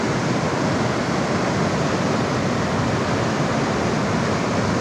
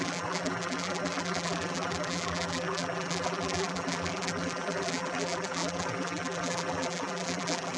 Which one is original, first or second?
first